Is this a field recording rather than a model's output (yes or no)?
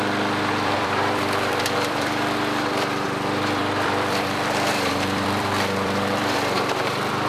no